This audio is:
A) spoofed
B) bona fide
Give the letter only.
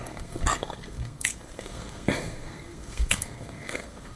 A